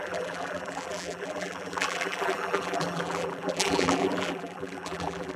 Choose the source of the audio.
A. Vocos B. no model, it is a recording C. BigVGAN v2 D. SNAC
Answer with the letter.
C